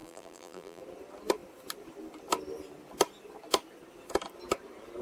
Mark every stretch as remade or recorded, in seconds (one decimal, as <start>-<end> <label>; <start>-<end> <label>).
0.0-0.8 remade; 0.8-5.0 recorded

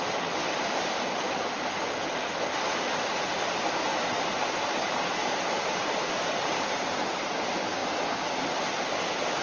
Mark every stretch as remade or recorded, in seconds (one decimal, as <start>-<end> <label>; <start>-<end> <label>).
0.0-0.4 recorded; 0.4-1.6 remade; 1.6-3.9 recorded; 3.9-6.2 remade; 6.2-9.4 recorded

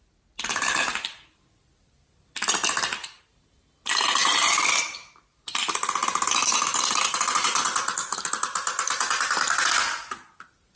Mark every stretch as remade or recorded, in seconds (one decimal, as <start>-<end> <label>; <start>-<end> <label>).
0.0-6.0 recorded; 6.0-7.6 remade; 7.6-10.8 recorded

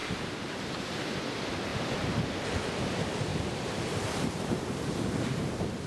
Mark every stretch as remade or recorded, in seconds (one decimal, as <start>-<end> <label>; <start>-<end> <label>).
0.0-0.8 remade; 0.8-1.7 recorded; 1.7-2.2 remade; 2.2-3.3 recorded; 3.3-5.5 remade; 5.5-5.9 recorded

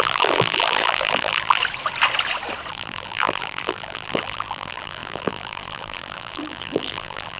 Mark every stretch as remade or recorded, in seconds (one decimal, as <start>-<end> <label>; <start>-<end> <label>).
0.0-1.6 remade; 1.6-2.7 recorded; 2.7-7.4 remade